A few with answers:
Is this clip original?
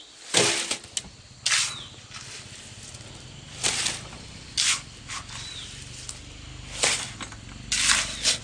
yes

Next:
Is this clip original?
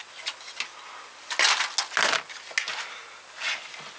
yes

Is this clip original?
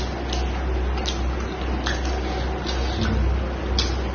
yes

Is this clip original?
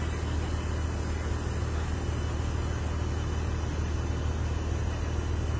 yes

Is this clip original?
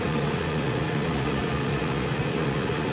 no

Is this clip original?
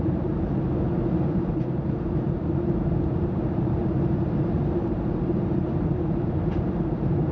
no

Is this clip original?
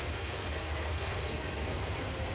no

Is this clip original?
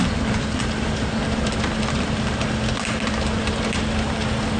yes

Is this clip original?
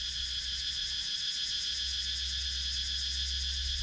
yes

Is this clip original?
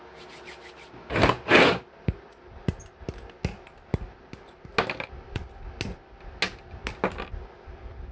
yes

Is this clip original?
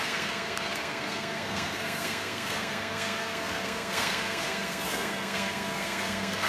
no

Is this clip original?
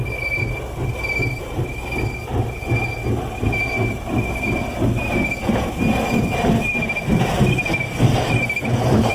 yes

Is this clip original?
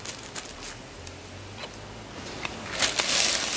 yes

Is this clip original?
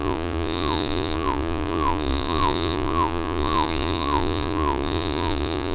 no